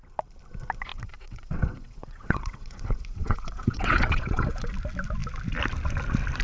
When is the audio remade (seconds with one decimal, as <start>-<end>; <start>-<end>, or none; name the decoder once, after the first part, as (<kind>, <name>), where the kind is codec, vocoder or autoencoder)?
0.9-4.7 (vocoder, WaveNeXt)